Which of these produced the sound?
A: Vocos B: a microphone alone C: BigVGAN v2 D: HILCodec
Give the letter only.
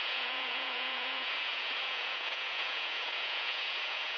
A